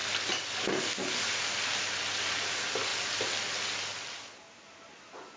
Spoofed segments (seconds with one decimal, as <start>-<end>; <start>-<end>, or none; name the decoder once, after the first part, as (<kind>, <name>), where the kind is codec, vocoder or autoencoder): none